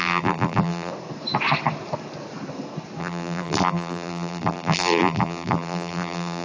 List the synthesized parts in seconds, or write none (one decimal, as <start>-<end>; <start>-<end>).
0.0-0.9; 3.0-6.4